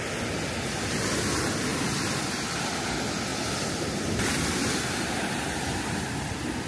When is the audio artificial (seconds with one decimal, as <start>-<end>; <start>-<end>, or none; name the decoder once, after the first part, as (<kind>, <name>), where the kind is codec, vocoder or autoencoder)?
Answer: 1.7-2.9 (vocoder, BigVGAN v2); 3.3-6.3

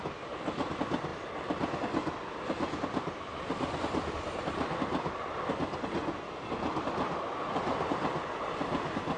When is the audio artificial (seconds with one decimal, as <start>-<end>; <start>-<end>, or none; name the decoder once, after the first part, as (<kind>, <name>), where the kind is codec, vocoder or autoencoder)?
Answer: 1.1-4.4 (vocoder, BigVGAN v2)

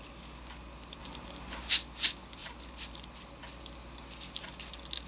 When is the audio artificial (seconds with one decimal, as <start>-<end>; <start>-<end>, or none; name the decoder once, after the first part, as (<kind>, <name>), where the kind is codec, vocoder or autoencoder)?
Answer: 1.0-1.7 (vocoder, BigVGAN v2); 2.4-3.4